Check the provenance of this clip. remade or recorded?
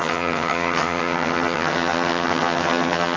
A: remade